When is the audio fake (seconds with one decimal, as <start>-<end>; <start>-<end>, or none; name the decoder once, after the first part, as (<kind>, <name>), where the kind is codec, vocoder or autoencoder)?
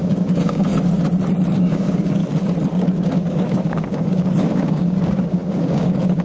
0.0-0.7 (codec, DAC); 1.5-2.2; 2.7-6.2